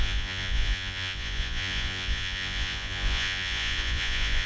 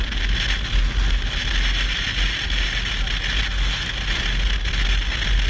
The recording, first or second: second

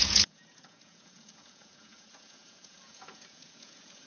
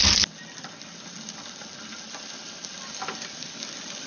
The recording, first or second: second